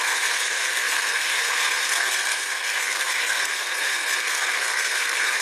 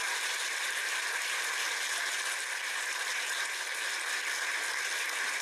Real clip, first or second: second